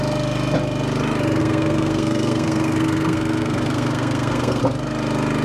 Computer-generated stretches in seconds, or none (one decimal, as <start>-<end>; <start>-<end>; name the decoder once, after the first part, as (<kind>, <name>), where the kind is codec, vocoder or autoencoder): 1.4-4.6 (codec, SNAC)